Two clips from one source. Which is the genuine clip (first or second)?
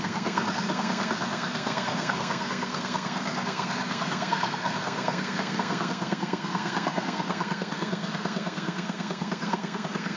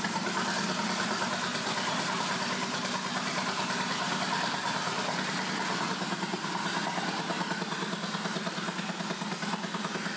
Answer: second